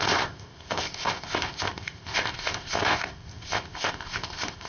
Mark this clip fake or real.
fake